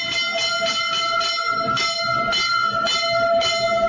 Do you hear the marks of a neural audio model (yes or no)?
no